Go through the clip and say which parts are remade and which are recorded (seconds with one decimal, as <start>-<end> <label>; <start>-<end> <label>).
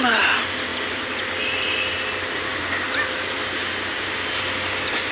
0.0-5.1 recorded